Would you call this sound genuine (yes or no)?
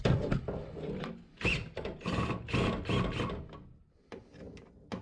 yes